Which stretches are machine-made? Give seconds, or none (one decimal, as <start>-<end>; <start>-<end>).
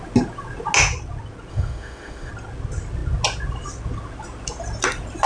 1.5-2.3